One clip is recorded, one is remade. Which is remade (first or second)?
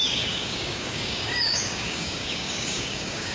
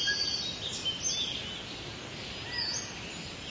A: first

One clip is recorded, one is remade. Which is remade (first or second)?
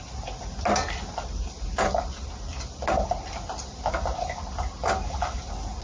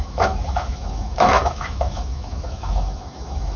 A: second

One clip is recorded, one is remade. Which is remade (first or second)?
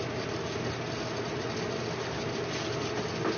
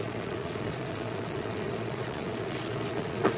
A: second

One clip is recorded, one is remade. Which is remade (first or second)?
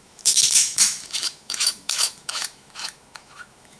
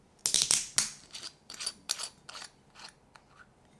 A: first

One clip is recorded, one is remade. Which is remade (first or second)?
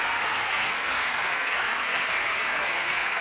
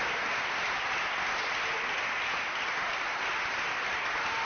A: first